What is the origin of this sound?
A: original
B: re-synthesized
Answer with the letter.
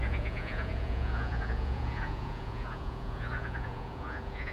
B